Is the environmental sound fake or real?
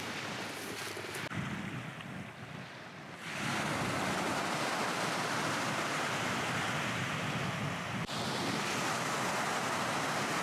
real